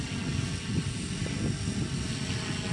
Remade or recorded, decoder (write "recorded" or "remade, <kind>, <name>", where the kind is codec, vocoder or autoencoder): recorded